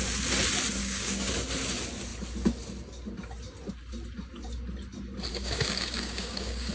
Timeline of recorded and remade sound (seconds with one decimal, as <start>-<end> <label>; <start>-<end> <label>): 0.0-0.8 recorded; 0.8-1.3 remade; 1.3-5.3 recorded; 5.3-6.7 remade